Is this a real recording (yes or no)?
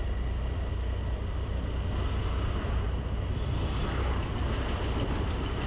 yes